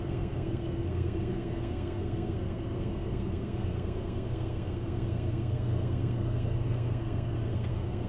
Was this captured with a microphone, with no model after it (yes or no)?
no